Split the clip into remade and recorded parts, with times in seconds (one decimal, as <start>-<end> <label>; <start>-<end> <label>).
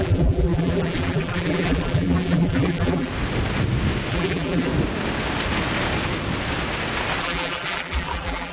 0.0-3.1 remade; 3.1-4.1 recorded; 4.1-4.7 remade; 4.7-7.2 recorded; 7.2-8.5 remade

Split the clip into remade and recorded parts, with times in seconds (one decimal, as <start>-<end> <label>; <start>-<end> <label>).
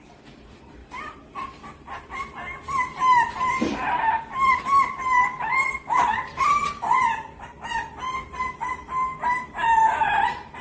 0.0-5.7 remade; 5.7-6.4 recorded; 6.4-10.6 remade